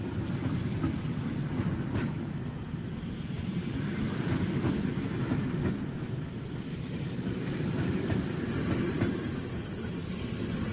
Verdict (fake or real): real